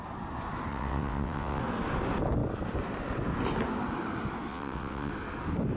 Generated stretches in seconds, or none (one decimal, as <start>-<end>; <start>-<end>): 0.7-1.6; 4.5-5.1

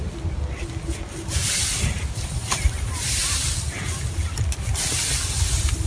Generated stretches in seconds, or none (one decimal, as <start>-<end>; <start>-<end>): none